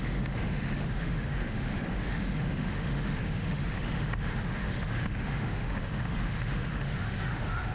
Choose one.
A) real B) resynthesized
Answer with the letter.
B